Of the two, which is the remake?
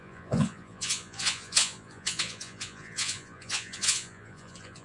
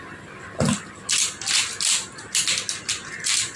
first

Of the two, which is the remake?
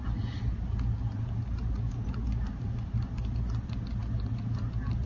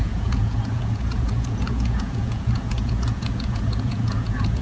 second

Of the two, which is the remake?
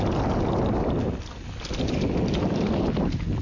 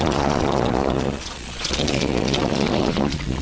second